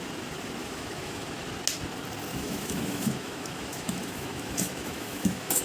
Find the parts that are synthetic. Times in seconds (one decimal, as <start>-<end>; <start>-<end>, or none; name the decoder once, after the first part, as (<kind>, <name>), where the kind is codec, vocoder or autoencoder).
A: 0.6-1.3 (autoencoder, DAC-VAE); 2.3-5.6